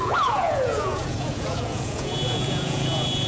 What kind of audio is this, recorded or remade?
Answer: remade